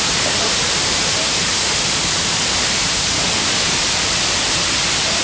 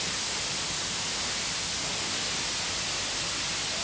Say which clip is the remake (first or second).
first